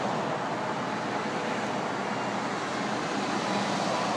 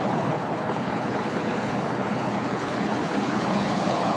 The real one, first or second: first